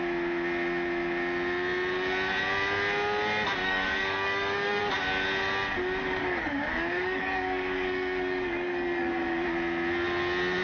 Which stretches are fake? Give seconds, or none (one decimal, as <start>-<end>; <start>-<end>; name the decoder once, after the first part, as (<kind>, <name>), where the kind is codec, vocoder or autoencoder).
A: 3.6-4.8 (codec, DAC); 6.2-9.1